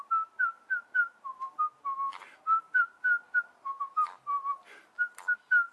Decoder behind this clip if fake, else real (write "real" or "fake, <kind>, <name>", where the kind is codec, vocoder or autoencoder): real